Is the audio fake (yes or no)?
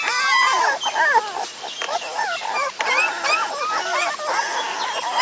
no